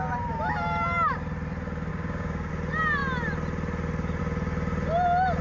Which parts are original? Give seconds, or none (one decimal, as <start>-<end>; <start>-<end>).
0.0-1.9; 2.5-5.4